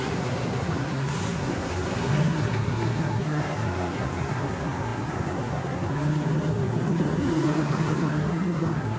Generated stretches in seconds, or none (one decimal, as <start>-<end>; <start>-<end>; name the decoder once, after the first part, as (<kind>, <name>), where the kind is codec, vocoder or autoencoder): 0.0-9.0 (codec, SNAC)